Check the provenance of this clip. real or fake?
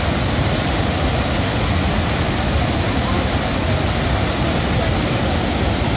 real